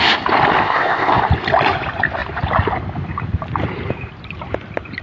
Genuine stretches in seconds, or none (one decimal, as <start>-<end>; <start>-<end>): 0.0-0.6; 1.2-5.0